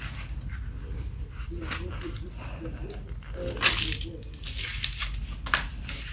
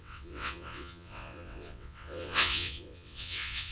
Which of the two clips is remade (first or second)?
second